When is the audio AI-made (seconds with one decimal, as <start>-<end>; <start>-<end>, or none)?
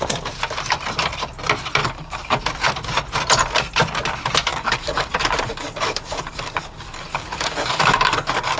1.8-2.4; 4.5-8.6